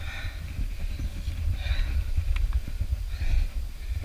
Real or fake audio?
real